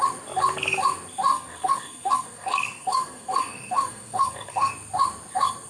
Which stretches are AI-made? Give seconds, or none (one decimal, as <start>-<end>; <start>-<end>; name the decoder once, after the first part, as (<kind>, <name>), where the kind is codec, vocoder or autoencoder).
1.3-4.7 (codec, SNAC)

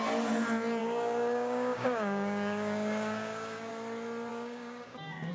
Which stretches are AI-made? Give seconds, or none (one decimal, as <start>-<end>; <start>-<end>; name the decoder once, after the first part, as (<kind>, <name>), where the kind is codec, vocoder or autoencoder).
0.8-3.7 (codec, DAC); 4.3-5.3

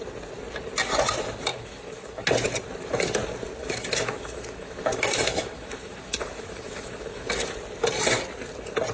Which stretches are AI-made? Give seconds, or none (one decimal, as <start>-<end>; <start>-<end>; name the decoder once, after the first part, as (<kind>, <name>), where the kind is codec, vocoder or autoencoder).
1.5-2.2 (autoencoder, DAC-VAE); 3.6-7.3